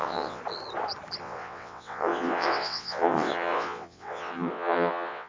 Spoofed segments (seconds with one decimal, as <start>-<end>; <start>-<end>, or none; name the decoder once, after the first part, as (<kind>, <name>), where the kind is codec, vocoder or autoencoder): 0.0-0.4 (vocoder, WaveNeXt); 1.2-5.3